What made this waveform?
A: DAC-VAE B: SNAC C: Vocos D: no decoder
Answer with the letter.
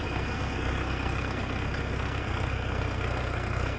B